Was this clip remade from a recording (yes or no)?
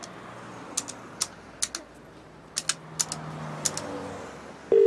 no